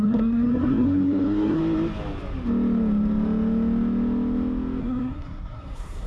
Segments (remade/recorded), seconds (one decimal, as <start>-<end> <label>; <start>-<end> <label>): 0.0-1.6 remade; 1.6-4.8 recorded; 4.8-6.1 remade